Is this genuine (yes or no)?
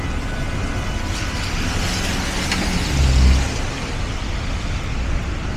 yes